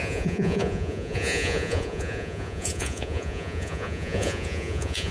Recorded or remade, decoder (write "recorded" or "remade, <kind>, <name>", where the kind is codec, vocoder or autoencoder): remade, vocoder, Vocos